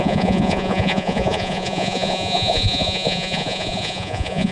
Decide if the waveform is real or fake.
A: fake